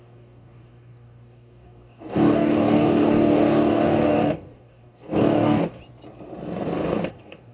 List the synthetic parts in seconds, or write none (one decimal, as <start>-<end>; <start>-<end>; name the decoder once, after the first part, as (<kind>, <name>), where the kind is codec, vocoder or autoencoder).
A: 0.0-5.8 (codec, DAC); 7.1-7.5